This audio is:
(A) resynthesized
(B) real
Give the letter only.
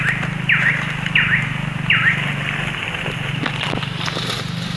B